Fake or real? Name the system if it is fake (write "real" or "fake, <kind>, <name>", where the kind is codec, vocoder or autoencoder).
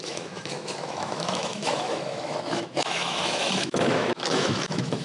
fake, autoencoder, DAC-VAE